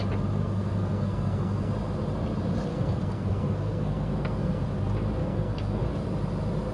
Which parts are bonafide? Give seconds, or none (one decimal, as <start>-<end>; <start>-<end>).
0.0-0.4; 1.7-2.7; 4.6-5.2; 5.8-6.7